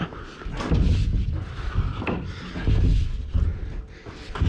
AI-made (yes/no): no